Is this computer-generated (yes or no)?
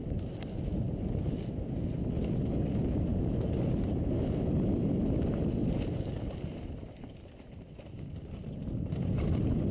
no